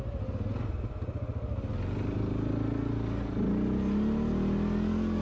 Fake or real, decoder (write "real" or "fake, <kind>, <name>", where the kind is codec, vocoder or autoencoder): real